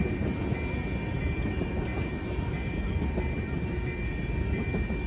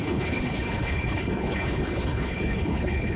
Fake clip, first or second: second